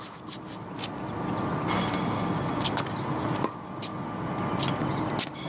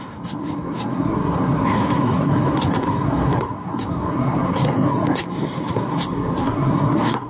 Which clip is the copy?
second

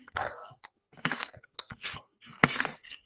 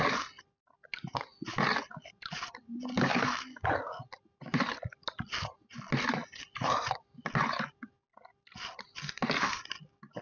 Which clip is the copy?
first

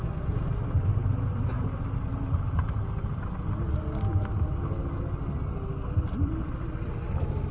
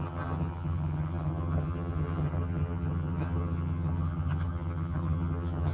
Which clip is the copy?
second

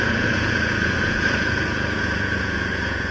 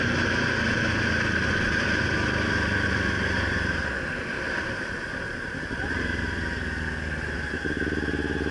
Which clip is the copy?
first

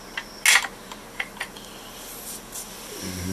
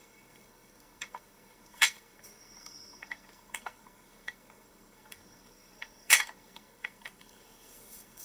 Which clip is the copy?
second